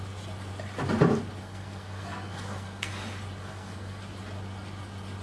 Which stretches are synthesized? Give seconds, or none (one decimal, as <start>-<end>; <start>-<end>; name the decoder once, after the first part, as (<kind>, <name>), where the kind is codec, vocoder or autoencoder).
1.4-2.9 (codec, SNAC); 3.4-4.0